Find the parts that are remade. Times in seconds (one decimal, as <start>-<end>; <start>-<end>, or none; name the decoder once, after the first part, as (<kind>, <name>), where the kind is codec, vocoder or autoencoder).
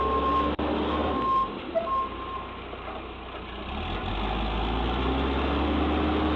none